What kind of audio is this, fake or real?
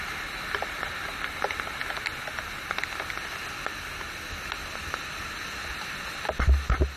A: real